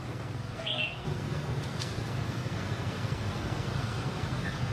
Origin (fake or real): fake